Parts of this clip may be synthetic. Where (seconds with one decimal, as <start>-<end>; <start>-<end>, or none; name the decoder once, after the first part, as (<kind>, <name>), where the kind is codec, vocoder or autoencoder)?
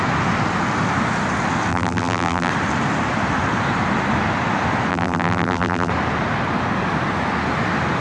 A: 1.7-2.5 (vocoder, BigVGAN v2); 4.9-5.9